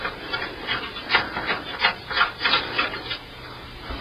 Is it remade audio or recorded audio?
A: remade